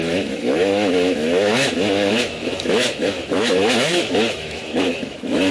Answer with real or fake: fake